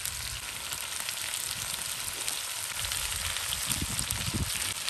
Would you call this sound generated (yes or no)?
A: no